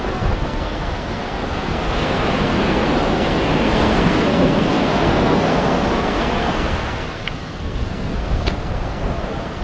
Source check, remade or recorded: remade